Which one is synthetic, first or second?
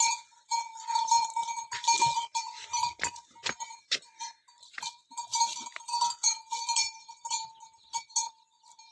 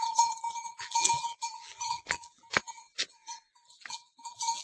second